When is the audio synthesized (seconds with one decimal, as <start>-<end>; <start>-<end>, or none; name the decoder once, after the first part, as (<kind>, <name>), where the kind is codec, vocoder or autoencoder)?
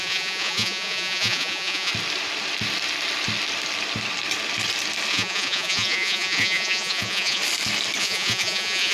0.0-1.9 (vocoder, Vocos); 5.1-7.4; 8.0-8.9